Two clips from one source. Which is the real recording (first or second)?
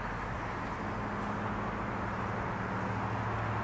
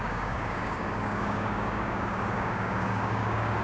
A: first